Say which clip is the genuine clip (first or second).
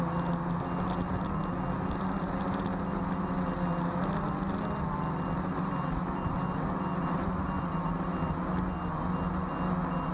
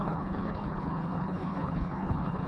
first